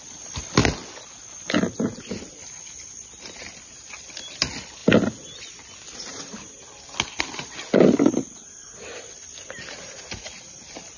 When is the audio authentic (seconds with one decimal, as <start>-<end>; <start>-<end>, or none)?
0.0-11.0